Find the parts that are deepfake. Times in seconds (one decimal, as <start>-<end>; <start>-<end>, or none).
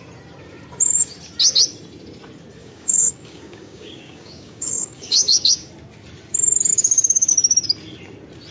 2.6-5.7; 6.7-7.3